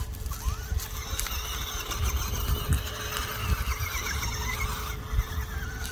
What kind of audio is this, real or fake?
real